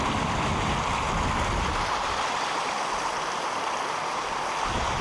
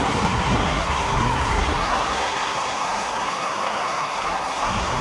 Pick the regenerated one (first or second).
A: second